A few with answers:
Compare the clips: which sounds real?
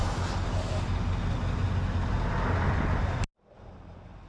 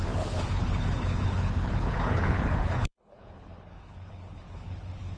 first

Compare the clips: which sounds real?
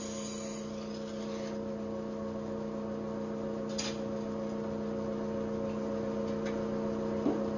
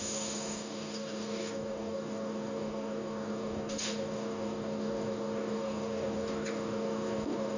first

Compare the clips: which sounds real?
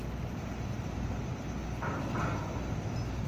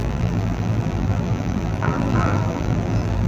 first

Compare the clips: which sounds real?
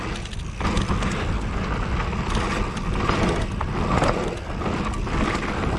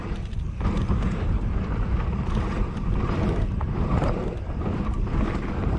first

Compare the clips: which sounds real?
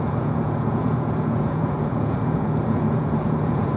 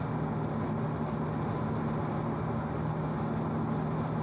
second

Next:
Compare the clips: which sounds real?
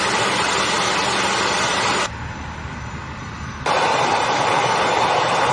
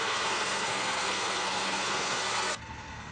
first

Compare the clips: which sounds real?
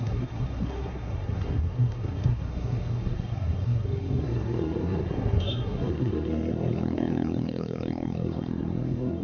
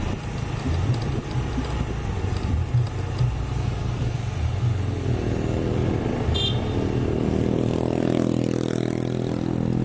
second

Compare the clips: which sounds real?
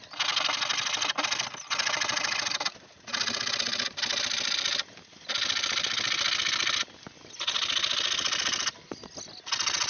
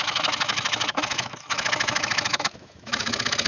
first